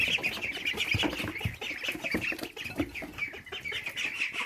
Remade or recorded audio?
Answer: recorded